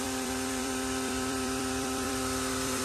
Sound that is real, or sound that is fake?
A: fake